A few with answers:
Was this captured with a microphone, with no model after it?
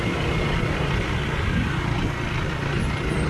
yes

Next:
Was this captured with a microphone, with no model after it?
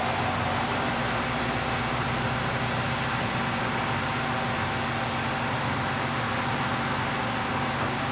yes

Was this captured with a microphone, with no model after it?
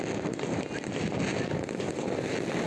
yes